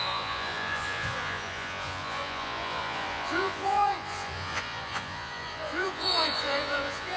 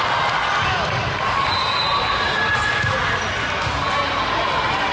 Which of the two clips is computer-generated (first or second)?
first